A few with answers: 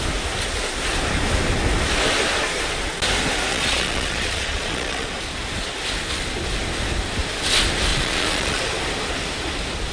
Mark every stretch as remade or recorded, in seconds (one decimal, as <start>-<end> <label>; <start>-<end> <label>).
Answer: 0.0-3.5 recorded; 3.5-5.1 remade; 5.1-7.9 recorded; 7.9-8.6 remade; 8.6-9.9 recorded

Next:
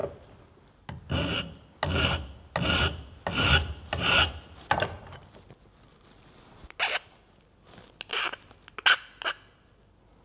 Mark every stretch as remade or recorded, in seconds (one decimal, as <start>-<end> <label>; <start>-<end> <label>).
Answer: 0.0-10.2 recorded

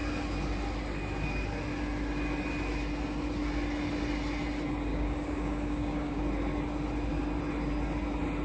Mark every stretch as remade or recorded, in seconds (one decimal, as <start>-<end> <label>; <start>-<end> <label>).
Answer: 0.0-4.9 recorded; 4.9-6.2 remade; 6.2-8.4 recorded